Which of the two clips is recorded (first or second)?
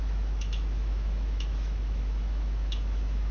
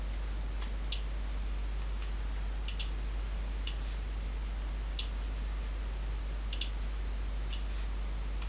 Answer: second